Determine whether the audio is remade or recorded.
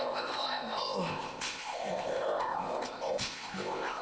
remade